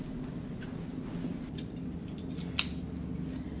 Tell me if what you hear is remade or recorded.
recorded